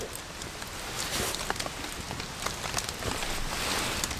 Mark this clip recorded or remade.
recorded